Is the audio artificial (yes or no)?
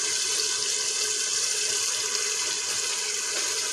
no